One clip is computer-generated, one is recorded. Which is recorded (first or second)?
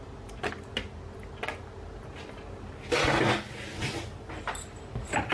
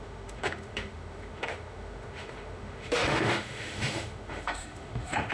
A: first